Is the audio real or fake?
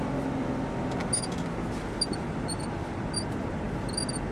real